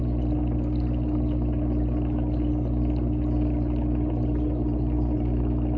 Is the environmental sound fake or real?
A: real